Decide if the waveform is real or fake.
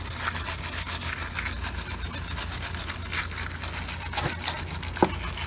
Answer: real